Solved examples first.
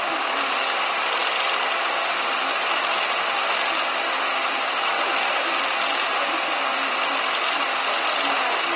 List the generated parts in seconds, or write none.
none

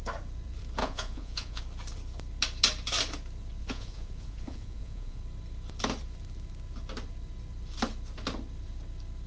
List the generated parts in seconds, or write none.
0.8-1.6 (vocoder, Vocos); 3.6-5.2

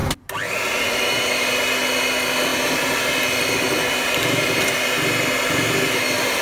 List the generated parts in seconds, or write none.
none

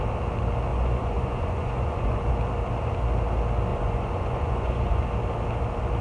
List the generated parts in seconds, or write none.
0.7-2.3 (vocoder, Vocos); 3.7-5.0

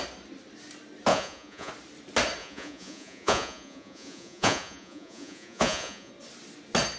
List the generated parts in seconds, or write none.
1.1-1.7 (vocoder, Vocos); 2.4-6.1

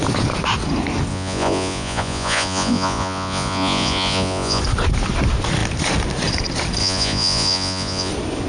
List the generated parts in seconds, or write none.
1.1-4.6 (vocoder, Vocos); 6.8-8.1